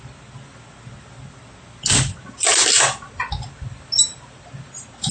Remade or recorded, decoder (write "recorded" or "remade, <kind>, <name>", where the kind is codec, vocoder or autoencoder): recorded